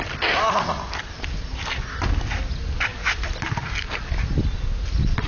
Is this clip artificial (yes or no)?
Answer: no